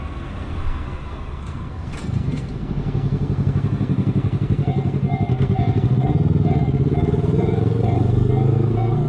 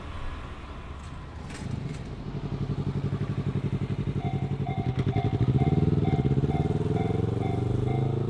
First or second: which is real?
second